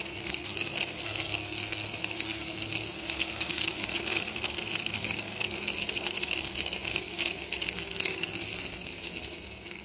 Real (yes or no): no